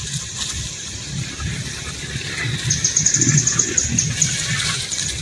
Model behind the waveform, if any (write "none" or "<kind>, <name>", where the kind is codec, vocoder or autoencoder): none